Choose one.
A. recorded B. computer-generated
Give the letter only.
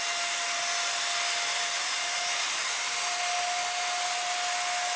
A